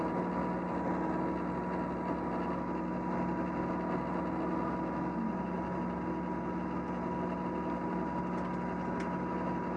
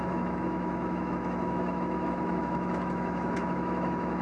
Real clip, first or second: first